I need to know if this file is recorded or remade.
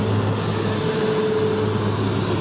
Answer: recorded